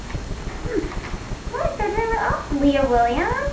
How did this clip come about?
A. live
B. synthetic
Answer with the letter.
A